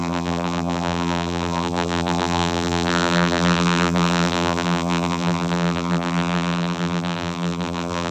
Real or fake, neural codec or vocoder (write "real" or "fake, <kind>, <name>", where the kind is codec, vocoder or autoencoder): fake, vocoder, BigVGAN v2